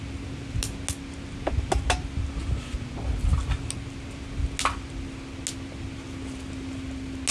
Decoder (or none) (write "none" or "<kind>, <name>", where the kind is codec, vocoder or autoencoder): none